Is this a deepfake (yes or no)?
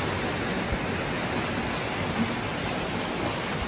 no